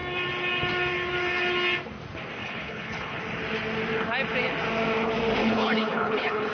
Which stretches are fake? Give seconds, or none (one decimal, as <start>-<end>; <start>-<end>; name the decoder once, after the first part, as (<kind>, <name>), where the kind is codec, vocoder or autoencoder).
2.4-3.2 (codec, HILCodec); 5.4-6.5